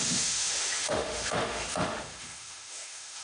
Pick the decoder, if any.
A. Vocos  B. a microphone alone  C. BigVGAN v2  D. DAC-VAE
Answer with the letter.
D